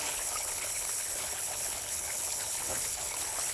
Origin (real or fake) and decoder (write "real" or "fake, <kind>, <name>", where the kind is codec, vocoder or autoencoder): fake, codec, HILCodec